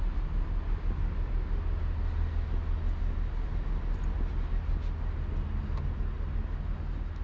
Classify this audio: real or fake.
real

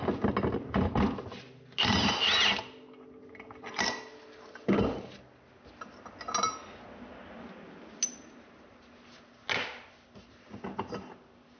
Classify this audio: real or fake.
real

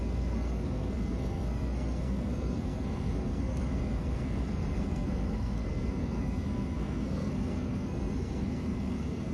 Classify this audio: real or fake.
fake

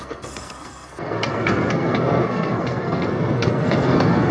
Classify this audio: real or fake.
fake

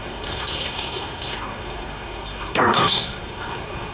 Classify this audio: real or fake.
fake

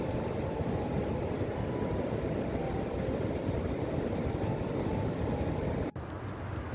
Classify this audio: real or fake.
real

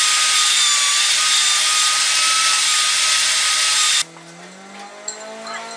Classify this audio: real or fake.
real